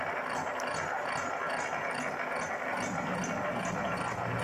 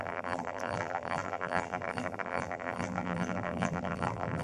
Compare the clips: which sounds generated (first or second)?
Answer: second